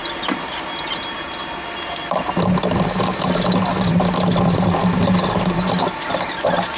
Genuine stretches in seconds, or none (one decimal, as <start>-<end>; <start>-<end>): 0.0-6.8